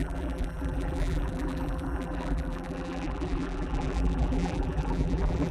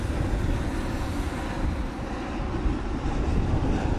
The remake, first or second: first